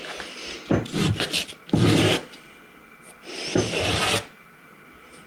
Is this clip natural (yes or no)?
yes